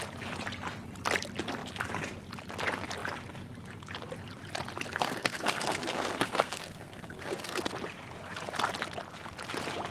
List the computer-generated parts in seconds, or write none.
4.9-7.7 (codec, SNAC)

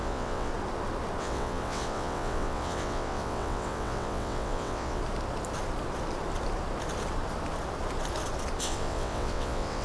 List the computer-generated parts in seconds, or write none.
0.0-0.5 (vocoder, WaveNeXt); 1.2-5.0; 8.6-9.8

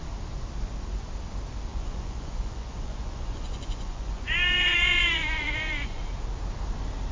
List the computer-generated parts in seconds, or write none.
1.7-6.0 (vocoder, Vocos)

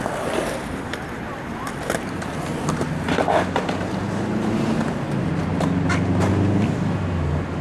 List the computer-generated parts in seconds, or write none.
none

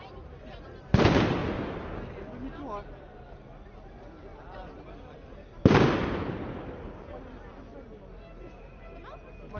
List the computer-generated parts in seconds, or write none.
none